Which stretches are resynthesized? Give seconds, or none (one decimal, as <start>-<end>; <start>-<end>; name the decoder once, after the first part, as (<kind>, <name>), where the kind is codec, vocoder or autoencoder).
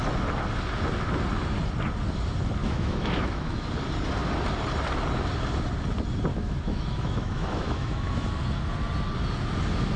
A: 2.6-3.7 (autoencoder, DAC-VAE); 6.3-8.3